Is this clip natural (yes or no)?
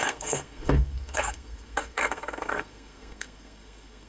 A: no